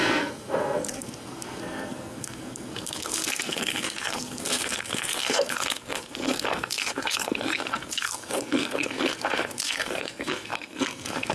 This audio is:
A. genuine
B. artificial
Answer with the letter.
B